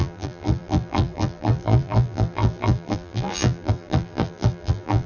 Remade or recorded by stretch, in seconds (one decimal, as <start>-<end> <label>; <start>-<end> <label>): 0.0-5.1 remade